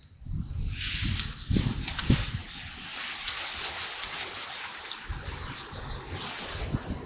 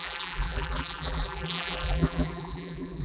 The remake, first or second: second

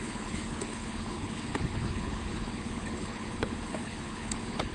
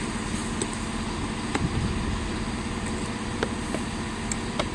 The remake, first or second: first